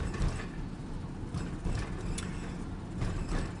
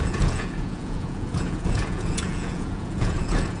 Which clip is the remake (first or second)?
second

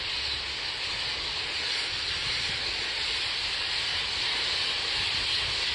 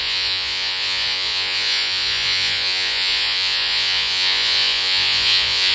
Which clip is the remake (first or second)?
second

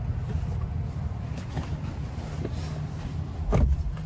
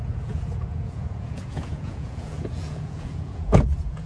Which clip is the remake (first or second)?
second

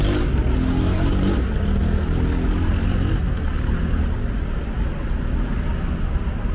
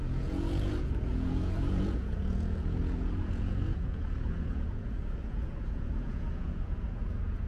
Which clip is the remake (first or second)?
second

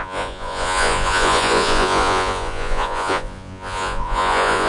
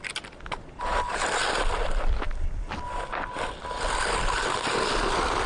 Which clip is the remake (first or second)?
first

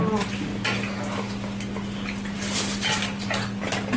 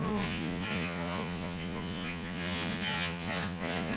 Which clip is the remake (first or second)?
second